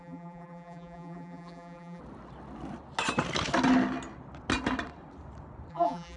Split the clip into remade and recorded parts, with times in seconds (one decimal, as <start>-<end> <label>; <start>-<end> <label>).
0.0-2.0 remade; 2.0-5.7 recorded; 5.7-6.2 remade